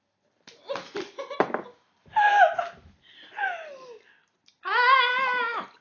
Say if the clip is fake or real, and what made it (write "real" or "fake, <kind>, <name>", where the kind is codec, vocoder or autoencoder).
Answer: real